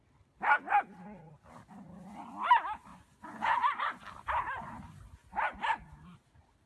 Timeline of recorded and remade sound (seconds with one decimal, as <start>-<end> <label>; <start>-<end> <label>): 0.0-2.9 recorded; 2.9-4.0 remade; 4.0-6.7 recorded